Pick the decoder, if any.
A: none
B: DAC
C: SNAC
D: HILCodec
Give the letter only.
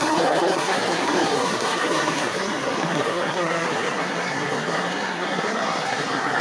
C